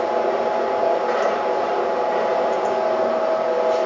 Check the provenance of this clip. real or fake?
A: real